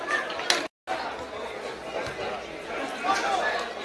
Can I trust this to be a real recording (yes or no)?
yes